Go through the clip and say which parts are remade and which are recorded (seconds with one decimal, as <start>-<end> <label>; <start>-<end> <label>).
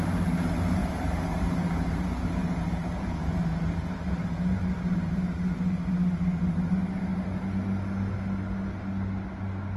0.0-0.8 recorded; 0.8-5.9 remade; 5.9-9.8 recorded